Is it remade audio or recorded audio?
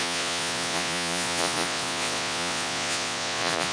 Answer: remade